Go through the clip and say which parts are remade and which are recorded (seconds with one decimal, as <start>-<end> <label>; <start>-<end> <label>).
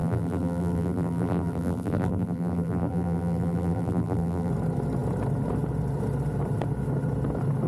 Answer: 0.0-4.5 remade; 4.5-7.7 recorded